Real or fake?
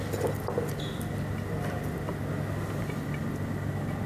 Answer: real